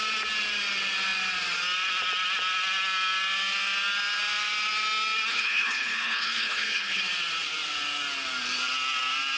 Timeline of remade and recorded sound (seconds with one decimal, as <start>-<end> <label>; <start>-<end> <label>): 0.0-5.3 recorded; 5.3-7.0 remade; 7.0-9.4 recorded